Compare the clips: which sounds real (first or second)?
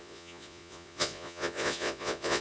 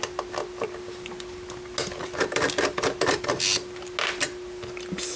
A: second